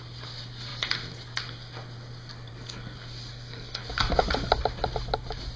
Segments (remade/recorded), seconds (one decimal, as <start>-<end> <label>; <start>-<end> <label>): 0.0-3.3 recorded; 3.3-3.8 remade; 3.8-5.6 recorded